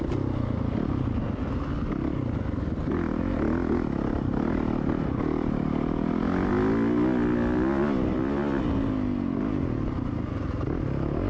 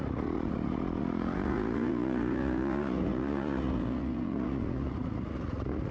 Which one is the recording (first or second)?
first